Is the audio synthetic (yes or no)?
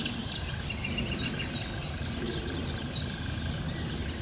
no